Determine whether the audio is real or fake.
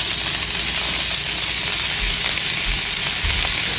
real